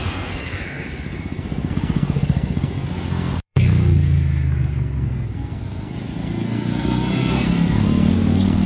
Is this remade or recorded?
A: remade